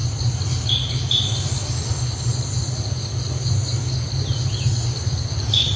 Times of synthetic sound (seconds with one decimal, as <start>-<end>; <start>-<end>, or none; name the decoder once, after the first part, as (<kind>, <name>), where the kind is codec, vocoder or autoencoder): none